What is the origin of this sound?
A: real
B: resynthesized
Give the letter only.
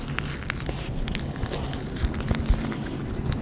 A